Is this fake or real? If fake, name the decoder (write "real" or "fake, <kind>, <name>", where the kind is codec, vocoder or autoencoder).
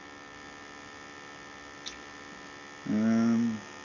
real